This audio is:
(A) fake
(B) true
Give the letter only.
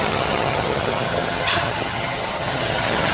A